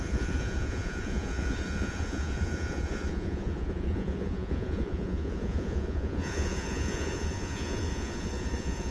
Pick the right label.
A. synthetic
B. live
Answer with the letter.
A